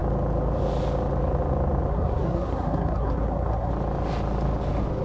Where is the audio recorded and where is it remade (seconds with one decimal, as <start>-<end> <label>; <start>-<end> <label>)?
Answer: 0.0-1.9 recorded; 1.9-3.7 remade; 3.7-5.0 recorded